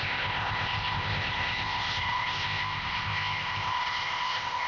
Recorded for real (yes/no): no